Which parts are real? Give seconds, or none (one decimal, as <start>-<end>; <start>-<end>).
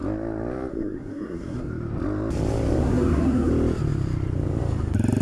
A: 0.0-0.7; 1.7-2.8; 3.5-5.2